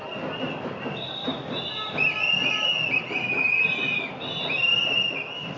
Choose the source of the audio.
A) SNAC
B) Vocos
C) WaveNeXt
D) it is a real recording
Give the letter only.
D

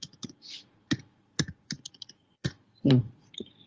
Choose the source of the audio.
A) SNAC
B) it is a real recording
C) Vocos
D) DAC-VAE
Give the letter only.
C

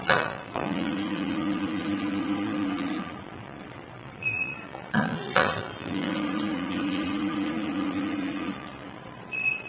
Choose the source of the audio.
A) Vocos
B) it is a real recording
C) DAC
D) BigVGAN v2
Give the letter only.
A